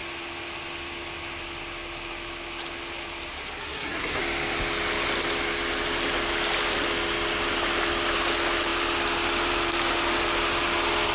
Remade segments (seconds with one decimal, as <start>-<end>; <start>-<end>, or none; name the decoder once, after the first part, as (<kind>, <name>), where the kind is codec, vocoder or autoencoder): 3.6-4.2 (codec, SNAC)